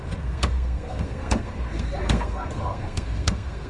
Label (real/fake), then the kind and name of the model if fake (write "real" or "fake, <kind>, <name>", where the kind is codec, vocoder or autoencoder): fake, codec, SNAC